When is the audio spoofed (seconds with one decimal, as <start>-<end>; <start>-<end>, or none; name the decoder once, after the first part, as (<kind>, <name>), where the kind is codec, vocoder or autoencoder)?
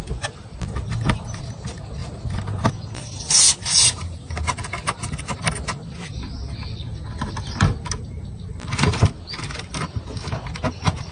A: none